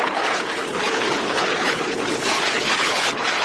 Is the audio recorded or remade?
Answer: remade